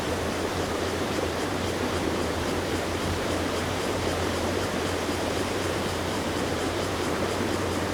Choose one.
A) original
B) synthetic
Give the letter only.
B